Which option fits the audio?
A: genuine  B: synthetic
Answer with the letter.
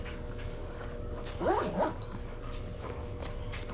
B